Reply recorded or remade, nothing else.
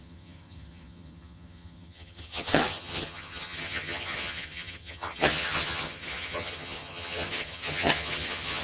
remade